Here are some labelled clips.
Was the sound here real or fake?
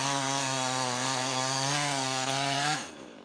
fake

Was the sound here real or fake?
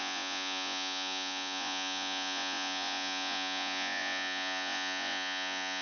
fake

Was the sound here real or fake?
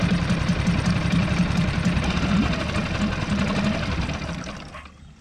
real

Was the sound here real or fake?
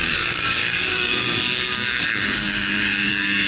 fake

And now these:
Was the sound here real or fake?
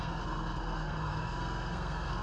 fake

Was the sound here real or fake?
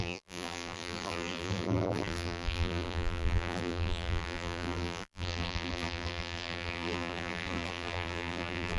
fake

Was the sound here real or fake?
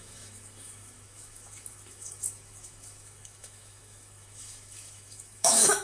fake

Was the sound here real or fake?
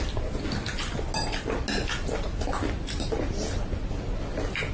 real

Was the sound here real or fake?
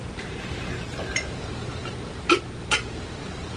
fake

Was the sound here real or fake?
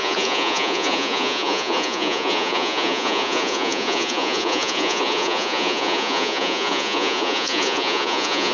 fake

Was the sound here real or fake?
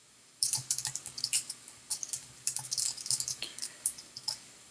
fake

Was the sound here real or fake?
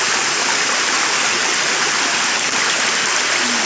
real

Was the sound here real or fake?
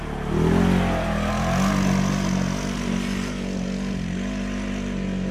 real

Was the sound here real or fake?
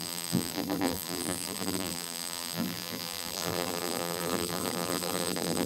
fake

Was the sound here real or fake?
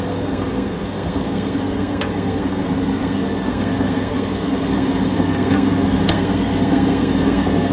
fake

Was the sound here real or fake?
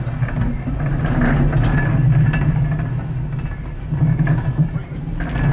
real